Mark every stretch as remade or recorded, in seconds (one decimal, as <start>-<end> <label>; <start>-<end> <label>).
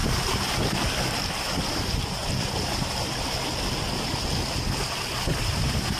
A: 0.0-1.7 recorded; 1.7-2.2 remade; 2.2-5.4 recorded; 5.4-6.0 remade